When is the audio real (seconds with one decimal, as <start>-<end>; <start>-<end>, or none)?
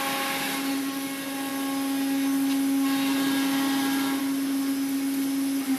0.0-5.8